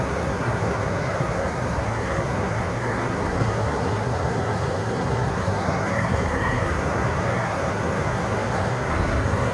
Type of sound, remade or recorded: remade